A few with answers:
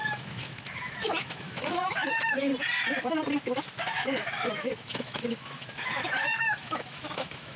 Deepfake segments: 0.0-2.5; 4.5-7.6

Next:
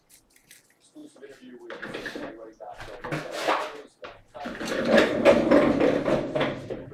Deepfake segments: none

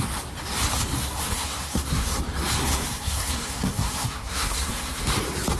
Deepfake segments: 1.0-2.2; 2.6-5.0

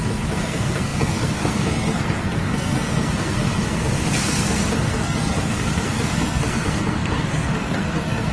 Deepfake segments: 0.0-8.3

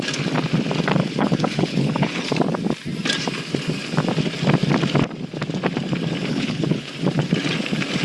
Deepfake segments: 1.0-2.2; 6.3-6.9

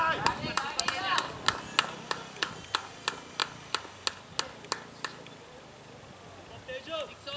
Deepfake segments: none

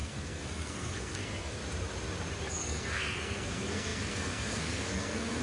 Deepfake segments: 0.0-1.6; 2.5-5.4

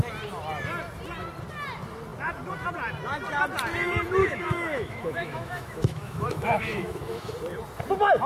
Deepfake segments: 4.2-7.3